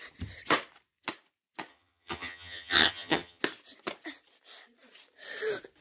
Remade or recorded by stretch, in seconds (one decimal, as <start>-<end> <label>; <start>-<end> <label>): 0.0-1.7 recorded; 1.7-3.4 remade; 3.4-5.8 recorded